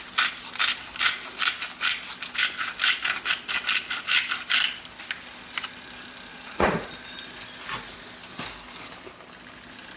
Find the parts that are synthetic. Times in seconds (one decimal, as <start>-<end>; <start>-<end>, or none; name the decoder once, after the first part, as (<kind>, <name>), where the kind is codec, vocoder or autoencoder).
6.3-6.9 (vocoder, Vocos)

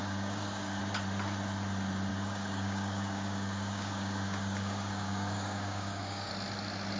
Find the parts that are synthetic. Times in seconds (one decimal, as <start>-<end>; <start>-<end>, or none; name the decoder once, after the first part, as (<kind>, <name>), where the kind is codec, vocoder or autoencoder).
0.0-0.8 (codec, DAC); 2.1-6.3

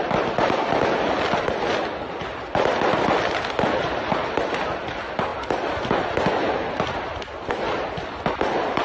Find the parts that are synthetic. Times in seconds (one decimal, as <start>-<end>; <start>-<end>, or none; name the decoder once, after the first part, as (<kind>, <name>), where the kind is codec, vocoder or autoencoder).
none

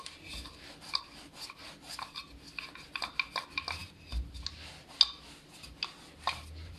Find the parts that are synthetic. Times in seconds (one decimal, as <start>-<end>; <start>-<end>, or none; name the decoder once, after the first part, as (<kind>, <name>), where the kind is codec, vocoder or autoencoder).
none

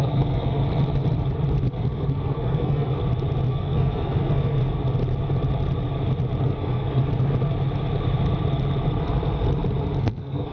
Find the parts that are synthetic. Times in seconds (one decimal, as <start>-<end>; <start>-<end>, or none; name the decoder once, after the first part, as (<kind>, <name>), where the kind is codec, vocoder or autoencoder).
0.0-0.6 (codec, SNAC); 1.7-3.0; 3.5-4.6; 6.4-7.0; 10.0-10.5

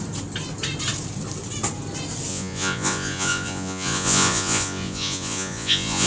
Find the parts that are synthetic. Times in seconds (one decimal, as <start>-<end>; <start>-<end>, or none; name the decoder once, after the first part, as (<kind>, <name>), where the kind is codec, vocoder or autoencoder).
2.3-6.1 (vocoder, Vocos)